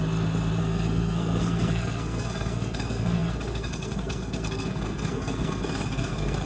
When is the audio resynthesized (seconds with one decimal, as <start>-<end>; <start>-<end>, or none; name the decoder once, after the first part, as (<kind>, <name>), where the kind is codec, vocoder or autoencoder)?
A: 0.6-6.5 (codec, SNAC)